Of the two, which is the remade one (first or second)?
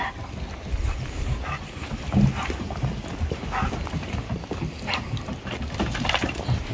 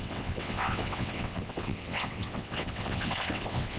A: second